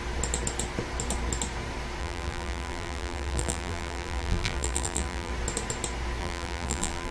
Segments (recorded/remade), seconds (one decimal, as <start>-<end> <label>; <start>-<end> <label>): 0.0-2.0 recorded; 2.0-5.3 remade; 5.3-6.2 recorded; 6.2-7.1 remade